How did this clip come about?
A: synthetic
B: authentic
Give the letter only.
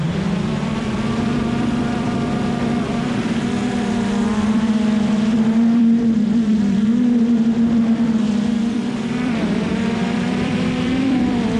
A